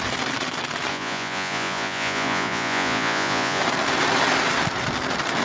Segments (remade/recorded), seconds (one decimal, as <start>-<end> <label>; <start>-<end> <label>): 0.0-0.9 recorded; 0.9-3.6 remade; 3.6-5.4 recorded